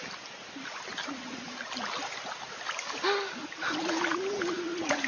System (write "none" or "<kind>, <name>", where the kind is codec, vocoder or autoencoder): none